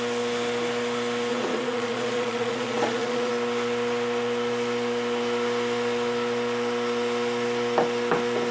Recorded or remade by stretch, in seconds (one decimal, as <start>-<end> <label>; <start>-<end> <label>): 0.0-1.3 recorded; 1.3-3.3 remade; 3.3-8.5 recorded